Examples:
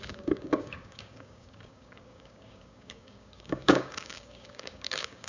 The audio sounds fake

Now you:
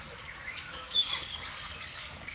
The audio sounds fake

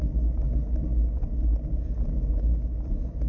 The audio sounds real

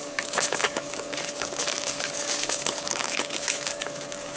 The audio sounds fake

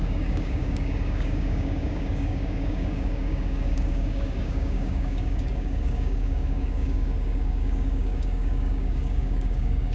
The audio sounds fake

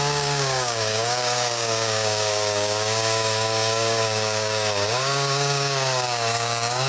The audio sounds fake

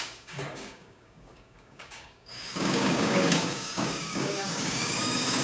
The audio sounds fake